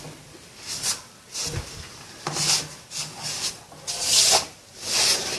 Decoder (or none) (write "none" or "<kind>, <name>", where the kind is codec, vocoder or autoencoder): none